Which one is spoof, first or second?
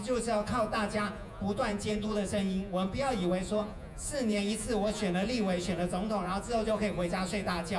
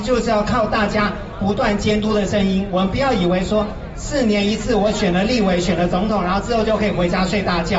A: first